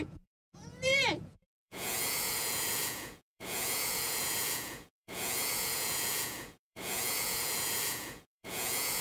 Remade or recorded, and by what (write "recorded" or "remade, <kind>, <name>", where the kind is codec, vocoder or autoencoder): remade, vocoder, Vocos